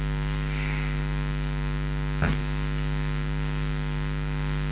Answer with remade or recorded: recorded